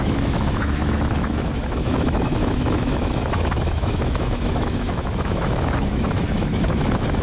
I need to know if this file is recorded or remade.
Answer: remade